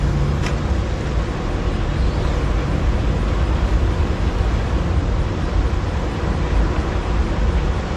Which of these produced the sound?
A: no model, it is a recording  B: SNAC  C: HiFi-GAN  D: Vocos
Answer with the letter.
A